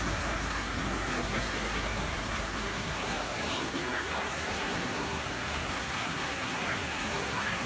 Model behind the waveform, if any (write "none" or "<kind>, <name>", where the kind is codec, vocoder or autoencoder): codec, SNAC